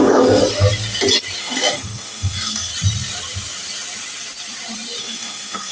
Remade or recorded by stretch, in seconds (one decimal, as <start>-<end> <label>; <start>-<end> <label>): 0.0-0.4 remade; 0.4-1.4 recorded; 1.4-2.7 remade; 2.7-5.0 recorded; 5.0-5.7 remade